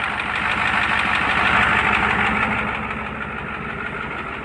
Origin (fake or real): real